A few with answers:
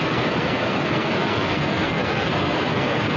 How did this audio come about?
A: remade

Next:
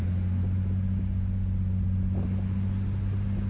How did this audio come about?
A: recorded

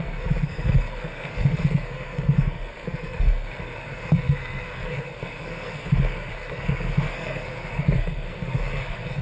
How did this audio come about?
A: remade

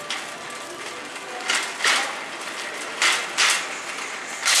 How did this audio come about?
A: recorded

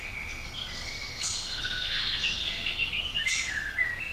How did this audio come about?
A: remade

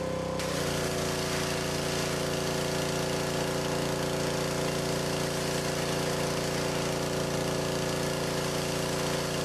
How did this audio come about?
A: recorded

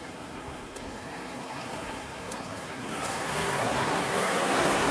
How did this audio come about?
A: remade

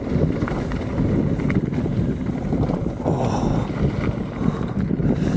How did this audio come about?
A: recorded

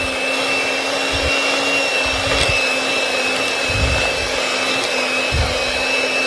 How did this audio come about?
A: recorded